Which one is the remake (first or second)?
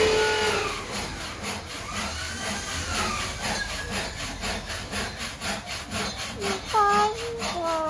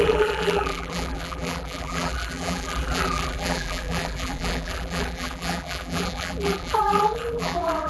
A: second